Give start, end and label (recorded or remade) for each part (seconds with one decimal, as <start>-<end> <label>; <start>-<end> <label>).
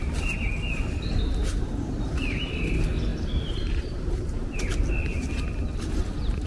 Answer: 0.0-1.4 recorded; 1.4-2.5 remade; 2.5-3.1 recorded; 3.1-4.7 remade; 4.7-6.5 recorded